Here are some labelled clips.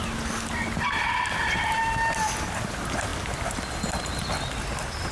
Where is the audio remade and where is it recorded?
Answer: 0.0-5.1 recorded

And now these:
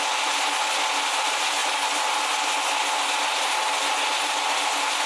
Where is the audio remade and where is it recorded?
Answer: 0.0-5.1 recorded